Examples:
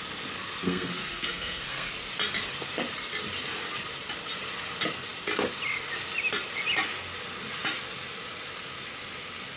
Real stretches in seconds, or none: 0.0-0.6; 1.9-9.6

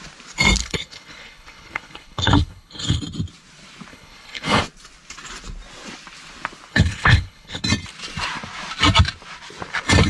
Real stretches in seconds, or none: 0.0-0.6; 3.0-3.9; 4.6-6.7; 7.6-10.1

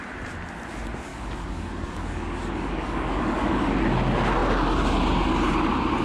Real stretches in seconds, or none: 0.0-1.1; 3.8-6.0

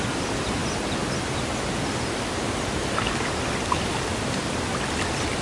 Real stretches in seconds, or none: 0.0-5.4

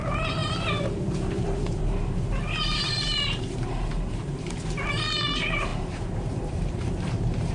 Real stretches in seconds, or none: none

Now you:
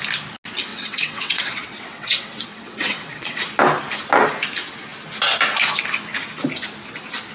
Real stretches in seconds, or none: 0.0-0.7; 3.4-7.3